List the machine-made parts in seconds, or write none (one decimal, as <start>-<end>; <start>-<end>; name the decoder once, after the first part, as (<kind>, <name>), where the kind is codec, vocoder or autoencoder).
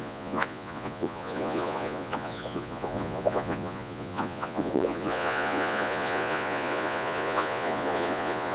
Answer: 0.0-8.5 (vocoder, Vocos)